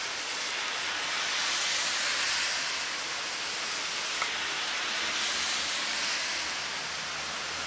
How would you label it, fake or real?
real